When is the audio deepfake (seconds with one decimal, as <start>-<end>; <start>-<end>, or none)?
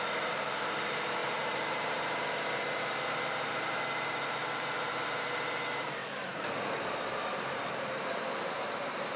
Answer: 0.0-6.0; 6.8-9.2